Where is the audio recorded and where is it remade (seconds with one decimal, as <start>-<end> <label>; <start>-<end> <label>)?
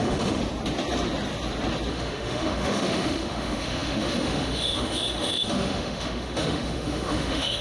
0.0-0.4 remade; 0.4-1.9 recorded; 1.9-7.6 remade